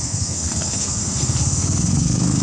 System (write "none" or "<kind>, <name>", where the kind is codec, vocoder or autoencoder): codec, SNAC